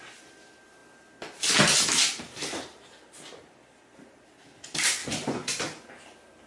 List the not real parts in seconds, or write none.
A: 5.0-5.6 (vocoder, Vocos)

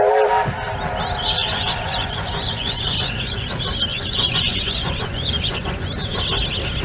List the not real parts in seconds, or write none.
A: 1.4-3.5 (vocoder, Vocos); 3.9-5.9

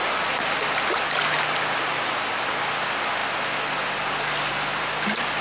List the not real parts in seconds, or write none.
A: none

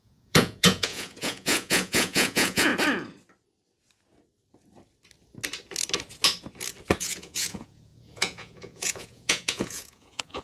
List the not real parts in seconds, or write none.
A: 0.0-2.7 (vocoder, Vocos); 7.0-10.4

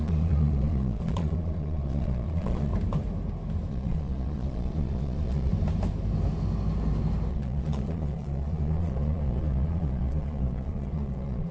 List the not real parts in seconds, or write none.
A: 0.0-2.7 (vocoder, Vocos); 3.7-5.5; 7.3-11.5

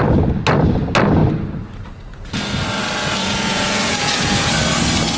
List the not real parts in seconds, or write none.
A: 3.2-4.5 (vocoder, Vocos)

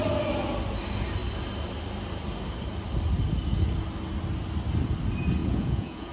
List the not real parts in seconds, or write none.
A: 5.4-6.1 (vocoder, Vocos)